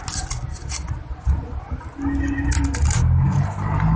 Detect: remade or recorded recorded